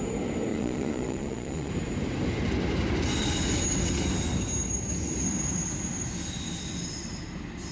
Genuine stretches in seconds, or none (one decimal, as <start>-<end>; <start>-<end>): 0.0-0.5; 1.7-7.7